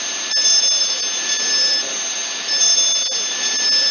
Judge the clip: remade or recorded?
recorded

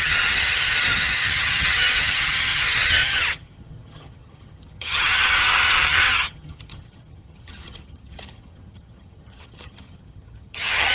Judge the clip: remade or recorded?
remade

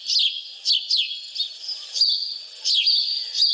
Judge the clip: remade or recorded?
recorded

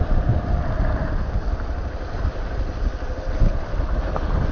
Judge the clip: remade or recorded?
recorded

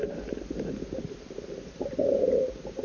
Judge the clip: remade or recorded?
recorded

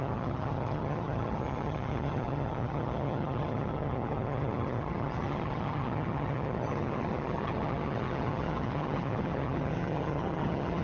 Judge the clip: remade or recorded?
remade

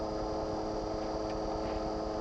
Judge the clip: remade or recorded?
recorded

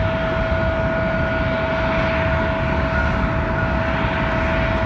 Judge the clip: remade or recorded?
recorded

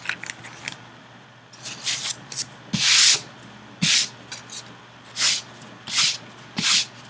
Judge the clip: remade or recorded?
recorded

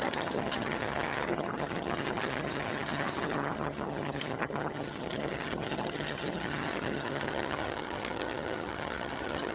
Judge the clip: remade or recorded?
remade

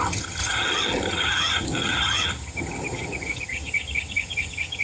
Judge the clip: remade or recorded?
remade